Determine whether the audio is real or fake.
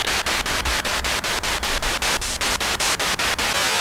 real